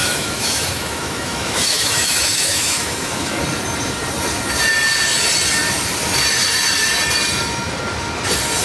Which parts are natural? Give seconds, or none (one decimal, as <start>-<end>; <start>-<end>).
3.4-8.6